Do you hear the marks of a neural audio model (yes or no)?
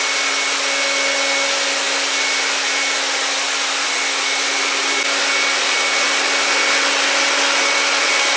no